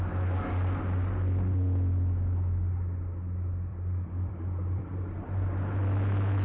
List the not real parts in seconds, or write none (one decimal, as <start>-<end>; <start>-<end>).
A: 3.7-4.8